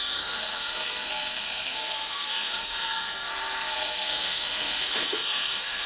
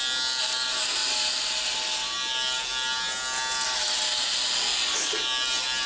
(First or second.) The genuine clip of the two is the second